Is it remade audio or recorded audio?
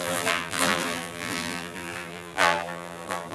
remade